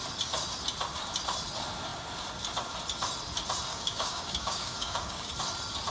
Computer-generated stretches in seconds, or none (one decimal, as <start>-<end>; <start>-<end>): 3.7-5.3